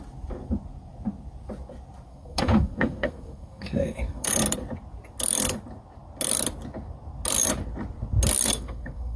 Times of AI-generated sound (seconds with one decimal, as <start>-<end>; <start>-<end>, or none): 2.1-4.3; 8.5-9.2